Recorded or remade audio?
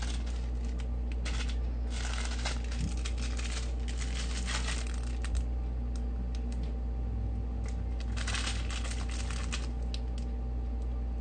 recorded